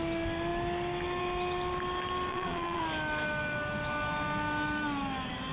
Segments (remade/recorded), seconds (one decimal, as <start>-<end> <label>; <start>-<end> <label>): 0.0-2.3 recorded; 2.3-2.8 remade; 2.8-5.5 recorded

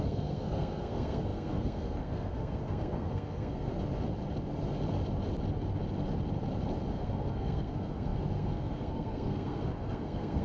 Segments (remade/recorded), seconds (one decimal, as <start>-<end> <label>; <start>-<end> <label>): 0.0-3.7 remade; 3.7-6.9 recorded; 6.9-10.4 remade